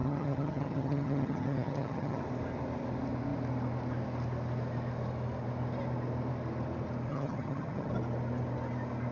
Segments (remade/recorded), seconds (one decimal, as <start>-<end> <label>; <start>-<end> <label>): 0.0-2.2 remade; 2.2-7.1 recorded; 7.1-7.9 remade; 7.9-9.1 recorded

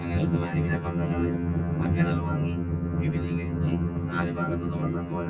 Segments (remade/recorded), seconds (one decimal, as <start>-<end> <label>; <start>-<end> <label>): 0.0-5.3 remade